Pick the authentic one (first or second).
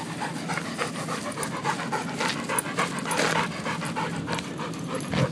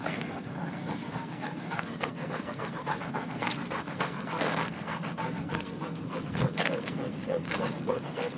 first